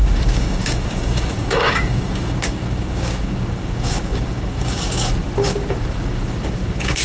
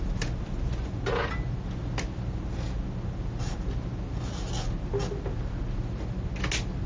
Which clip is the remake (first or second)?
first